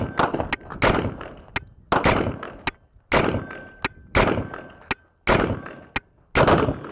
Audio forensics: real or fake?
real